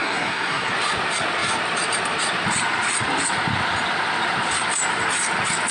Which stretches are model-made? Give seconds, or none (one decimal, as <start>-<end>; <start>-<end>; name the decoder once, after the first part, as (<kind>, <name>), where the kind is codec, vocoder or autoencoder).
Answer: 0.0-0.7 (codec, SNAC)